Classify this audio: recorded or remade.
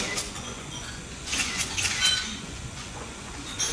remade